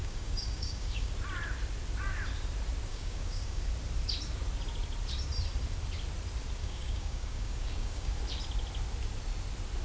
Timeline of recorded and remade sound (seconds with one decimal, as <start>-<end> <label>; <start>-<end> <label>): 0.0-1.1 remade; 1.1-2.9 recorded; 2.9-3.6 remade; 3.6-6.6 recorded; 6.6-8.1 remade; 8.1-9.8 recorded